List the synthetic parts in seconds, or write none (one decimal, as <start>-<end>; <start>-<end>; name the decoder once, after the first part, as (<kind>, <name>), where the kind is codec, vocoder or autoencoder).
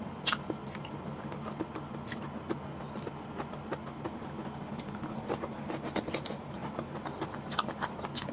none